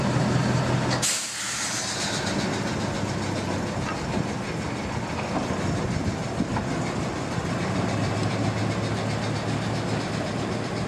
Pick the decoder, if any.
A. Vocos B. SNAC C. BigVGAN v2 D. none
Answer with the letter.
D